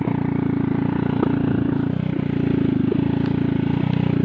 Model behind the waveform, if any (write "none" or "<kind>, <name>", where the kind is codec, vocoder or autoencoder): none